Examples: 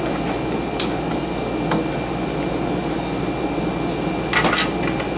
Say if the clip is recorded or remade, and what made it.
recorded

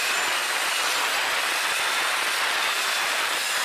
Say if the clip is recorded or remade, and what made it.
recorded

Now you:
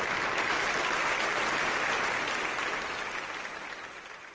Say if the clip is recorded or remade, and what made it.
recorded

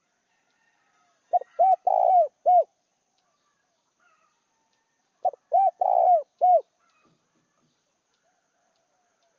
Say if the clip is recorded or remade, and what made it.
remade, vocoder, BigVGAN v2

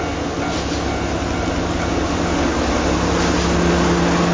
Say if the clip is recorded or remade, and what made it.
recorded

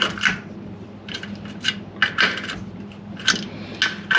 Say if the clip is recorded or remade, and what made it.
recorded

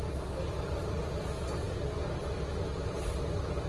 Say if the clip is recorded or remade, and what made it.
recorded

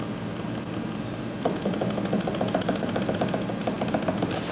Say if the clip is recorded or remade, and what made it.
recorded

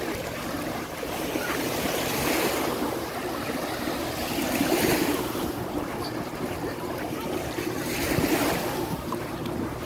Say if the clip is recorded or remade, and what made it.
remade, vocoder, BigVGAN v2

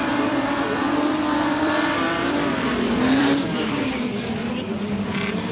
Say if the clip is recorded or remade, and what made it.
remade, vocoder, BigVGAN v2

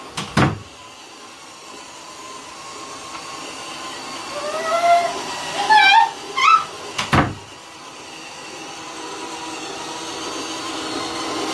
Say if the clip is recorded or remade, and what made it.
recorded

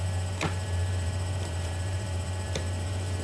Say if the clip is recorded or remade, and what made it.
remade, vocoder, BigVGAN v2